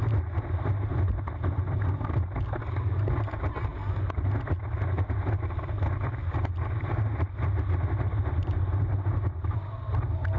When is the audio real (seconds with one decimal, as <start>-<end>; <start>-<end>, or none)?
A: 0.0-10.4